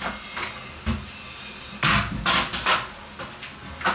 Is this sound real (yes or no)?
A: yes